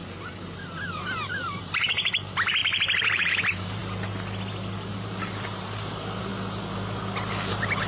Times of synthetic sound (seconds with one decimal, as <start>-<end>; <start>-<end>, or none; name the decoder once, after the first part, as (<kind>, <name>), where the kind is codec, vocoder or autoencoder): 0.0-3.8 (vocoder, BigVGAN v2); 4.9-6.3; 7.5-7.9

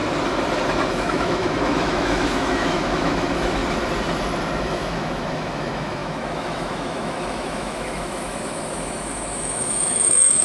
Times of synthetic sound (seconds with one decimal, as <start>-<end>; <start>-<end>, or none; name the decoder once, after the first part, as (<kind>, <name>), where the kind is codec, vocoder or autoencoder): 0.9-3.6 (autoencoder, DAC-VAE); 4.6-10.4

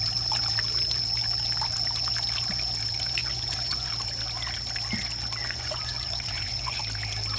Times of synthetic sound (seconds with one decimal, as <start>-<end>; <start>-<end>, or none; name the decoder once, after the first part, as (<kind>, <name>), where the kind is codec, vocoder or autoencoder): 3.2-3.9 (vocoder, Vocos); 5.4-6.8

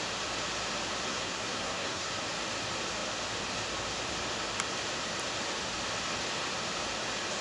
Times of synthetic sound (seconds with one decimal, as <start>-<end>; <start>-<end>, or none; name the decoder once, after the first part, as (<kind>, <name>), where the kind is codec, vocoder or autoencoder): 1.1-2.1 (codec, SNAC)

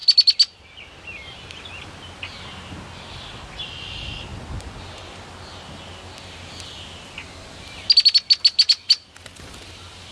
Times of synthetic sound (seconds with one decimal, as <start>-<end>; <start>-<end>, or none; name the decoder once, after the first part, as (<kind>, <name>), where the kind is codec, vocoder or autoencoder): none

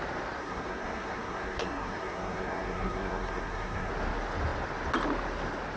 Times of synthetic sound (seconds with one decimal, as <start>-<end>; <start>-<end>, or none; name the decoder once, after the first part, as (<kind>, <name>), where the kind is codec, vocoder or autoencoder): 0.4-3.9 (codec, SNAC)

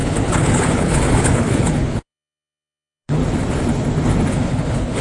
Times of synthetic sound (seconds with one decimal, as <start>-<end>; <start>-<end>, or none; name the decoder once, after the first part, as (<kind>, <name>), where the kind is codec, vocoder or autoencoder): 0.0-3.2 (codec, HILCodec); 4.3-5.0

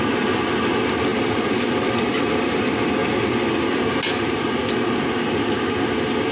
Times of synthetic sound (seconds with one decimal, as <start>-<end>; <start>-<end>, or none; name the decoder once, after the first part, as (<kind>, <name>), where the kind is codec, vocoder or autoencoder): none